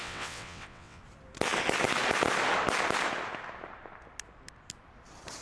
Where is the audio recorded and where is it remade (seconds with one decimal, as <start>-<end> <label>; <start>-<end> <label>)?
0.0-1.0 remade; 1.0-5.4 recorded